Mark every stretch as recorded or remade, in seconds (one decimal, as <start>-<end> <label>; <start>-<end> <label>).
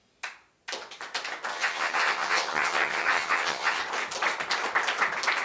0.0-1.5 recorded; 1.5-3.8 remade; 3.8-5.4 recorded